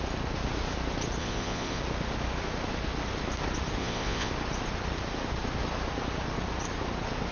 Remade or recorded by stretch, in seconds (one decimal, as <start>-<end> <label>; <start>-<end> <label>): 0.0-1.2 recorded; 1.2-1.8 remade; 1.8-3.8 recorded; 3.8-4.3 remade; 4.3-7.3 recorded